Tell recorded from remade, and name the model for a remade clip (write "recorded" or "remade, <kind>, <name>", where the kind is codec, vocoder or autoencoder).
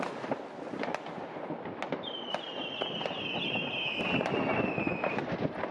recorded